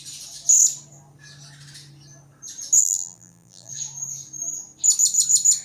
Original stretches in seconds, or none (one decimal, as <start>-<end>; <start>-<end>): 0.0-2.8; 3.7-5.6